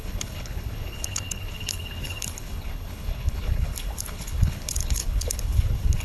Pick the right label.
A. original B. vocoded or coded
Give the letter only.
B